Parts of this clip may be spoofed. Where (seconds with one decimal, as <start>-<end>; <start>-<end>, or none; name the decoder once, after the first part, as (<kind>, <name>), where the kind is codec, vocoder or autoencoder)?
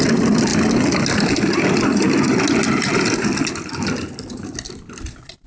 none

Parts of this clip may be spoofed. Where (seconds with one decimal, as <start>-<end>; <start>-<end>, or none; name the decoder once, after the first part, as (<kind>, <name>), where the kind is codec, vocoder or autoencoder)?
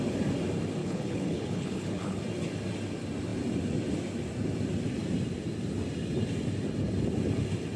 0.8-2.2 (codec, HILCodec)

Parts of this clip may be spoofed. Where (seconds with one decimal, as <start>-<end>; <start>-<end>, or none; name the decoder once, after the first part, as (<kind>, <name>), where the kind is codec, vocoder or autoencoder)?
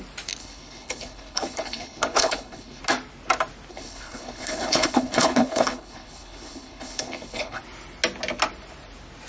0.4-2.8 (codec, HILCodec); 3.7-7.6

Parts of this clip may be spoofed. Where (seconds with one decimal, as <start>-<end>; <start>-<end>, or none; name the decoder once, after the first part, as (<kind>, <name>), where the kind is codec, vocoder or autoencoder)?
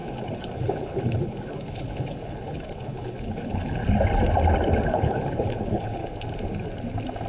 0.0-3.8 (codec, HILCodec); 4.9-6.0